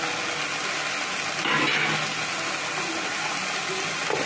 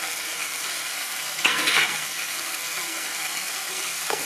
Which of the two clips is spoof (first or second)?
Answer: second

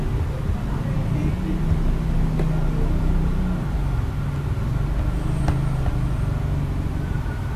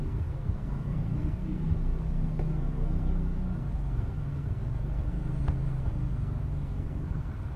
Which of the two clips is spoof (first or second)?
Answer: second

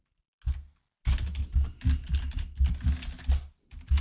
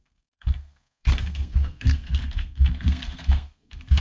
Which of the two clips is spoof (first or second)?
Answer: second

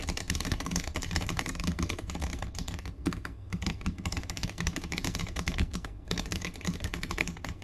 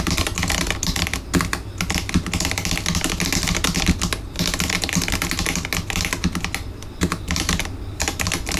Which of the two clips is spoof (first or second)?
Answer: first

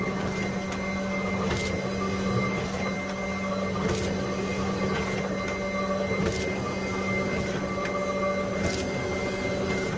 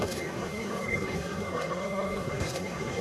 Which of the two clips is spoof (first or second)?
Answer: second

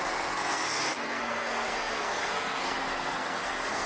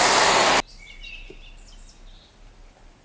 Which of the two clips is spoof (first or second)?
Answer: first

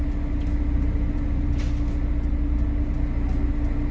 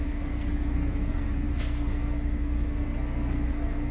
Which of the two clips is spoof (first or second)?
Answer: second